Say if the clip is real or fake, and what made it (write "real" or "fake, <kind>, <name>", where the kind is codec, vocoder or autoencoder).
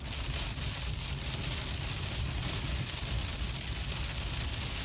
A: real